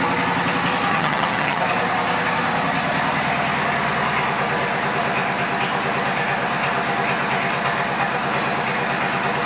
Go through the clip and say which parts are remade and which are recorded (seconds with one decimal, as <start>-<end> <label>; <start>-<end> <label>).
0.0-0.9 recorded; 0.9-1.6 remade; 1.6-9.5 recorded